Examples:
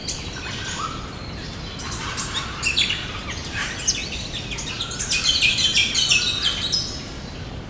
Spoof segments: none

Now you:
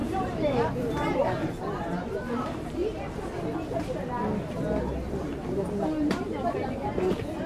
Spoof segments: 0.0-2.8 (vocoder, BigVGAN v2); 5.3-7.5

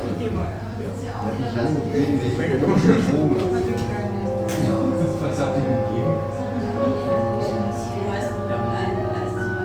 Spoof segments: 0.0-1.3 (vocoder, BigVGAN v2); 2.3-3.9; 4.5-5.6; 6.9-9.6

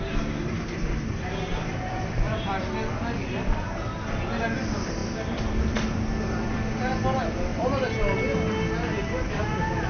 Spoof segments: 1.5-2.7 (vocoder, BigVGAN v2); 5.0-7.7

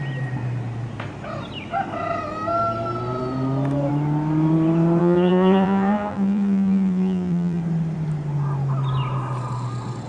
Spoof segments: 5.0-7.6 (vocoder, BigVGAN v2)

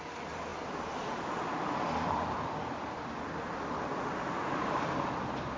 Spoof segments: 0.5-3.8 (vocoder, BigVGAN v2)